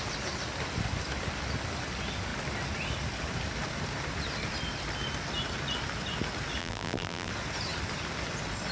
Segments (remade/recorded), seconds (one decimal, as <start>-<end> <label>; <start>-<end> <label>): 0.0-6.6 recorded; 6.6-7.3 remade; 7.3-8.7 recorded